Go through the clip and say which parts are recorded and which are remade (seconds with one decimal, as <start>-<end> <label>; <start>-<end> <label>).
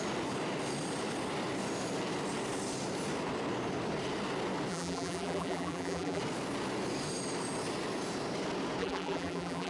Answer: 0.0-4.7 recorded; 4.7-6.2 remade; 6.2-8.8 recorded; 8.8-9.7 remade